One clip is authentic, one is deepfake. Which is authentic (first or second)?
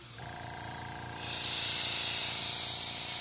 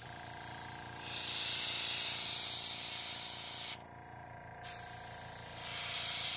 second